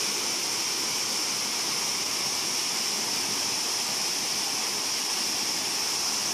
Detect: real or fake real